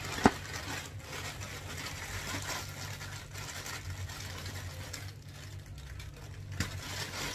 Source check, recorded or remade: recorded